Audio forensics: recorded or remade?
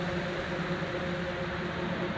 recorded